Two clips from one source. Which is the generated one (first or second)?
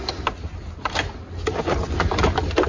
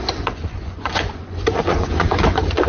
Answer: second